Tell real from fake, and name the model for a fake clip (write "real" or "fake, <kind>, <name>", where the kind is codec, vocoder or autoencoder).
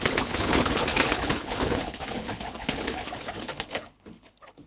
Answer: fake, codec, HILCodec